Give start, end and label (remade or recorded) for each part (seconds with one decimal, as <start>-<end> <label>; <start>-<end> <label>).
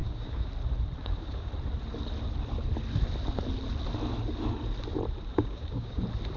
0.0-0.5 remade; 0.5-1.0 recorded; 1.0-1.5 remade; 1.5-5.3 recorded; 5.3-6.0 remade; 6.0-6.4 recorded